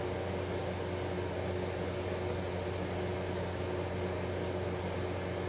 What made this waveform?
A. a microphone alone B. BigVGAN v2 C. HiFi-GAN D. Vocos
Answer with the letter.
A